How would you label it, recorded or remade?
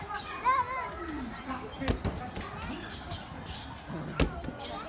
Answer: recorded